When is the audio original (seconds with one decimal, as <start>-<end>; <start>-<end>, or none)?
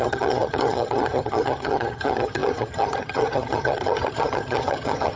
none